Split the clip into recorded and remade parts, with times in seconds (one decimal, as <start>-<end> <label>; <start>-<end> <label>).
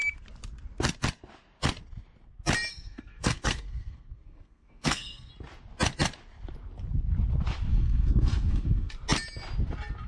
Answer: 0.0-2.7 recorded; 2.7-5.3 remade; 5.3-7.7 recorded; 7.7-8.9 remade; 8.9-10.1 recorded